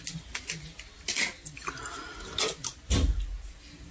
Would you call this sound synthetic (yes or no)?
no